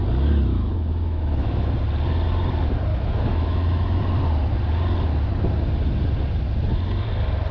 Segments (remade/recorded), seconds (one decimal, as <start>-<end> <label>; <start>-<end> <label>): 0.0-0.5 recorded; 0.5-1.7 remade; 1.7-2.9 recorded; 2.9-4.0 remade; 4.0-7.5 recorded